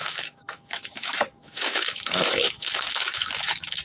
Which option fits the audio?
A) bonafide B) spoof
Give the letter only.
B